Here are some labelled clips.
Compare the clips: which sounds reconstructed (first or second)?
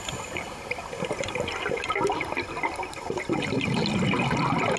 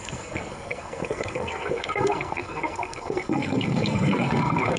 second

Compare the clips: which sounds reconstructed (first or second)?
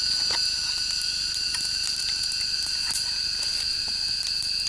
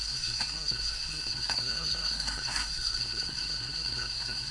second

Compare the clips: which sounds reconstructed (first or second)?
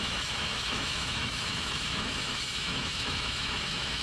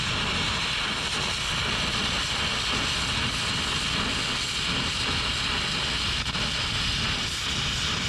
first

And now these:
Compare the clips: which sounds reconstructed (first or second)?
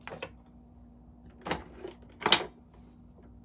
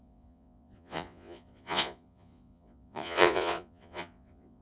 second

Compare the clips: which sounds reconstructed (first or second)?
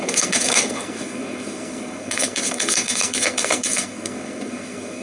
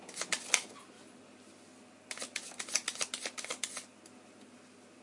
first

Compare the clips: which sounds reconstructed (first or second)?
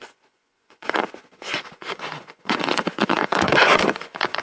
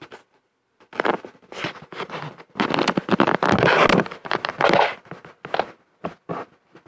first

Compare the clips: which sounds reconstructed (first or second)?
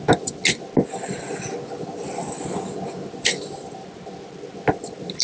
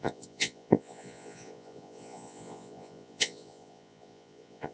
second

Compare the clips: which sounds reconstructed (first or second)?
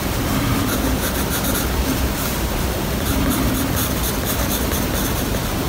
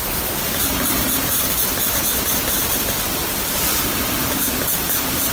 second